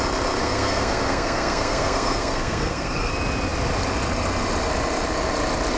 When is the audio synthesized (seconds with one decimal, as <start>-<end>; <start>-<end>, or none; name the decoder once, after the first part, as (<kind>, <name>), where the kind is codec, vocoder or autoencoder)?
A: 0.4-3.1 (codec, SNAC)